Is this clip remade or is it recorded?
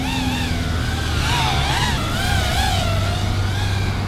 recorded